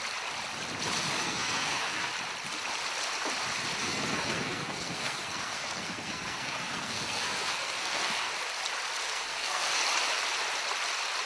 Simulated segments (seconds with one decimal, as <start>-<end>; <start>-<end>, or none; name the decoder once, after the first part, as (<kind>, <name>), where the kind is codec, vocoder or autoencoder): 1.2-2.1 (codec, SNAC); 3.8-8.3; 9.0-9.8